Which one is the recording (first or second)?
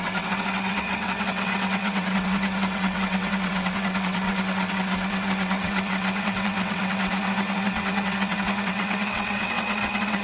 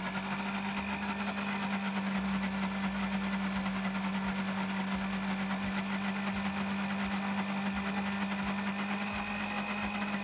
second